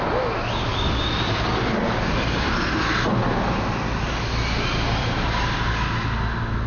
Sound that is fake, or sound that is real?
real